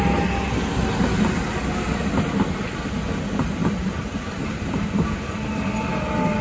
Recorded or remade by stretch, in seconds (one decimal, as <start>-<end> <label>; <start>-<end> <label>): 0.0-3.6 recorded; 3.6-4.8 remade; 4.8-6.4 recorded